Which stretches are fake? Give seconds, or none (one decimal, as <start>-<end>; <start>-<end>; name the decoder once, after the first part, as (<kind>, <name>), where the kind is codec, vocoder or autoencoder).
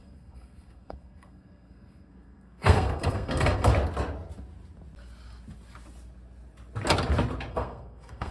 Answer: 0.0-3.7 (codec, SNAC); 7.5-8.3